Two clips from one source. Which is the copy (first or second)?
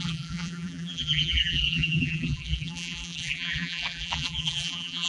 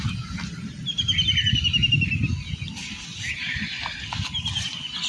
first